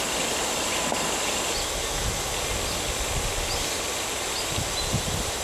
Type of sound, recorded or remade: recorded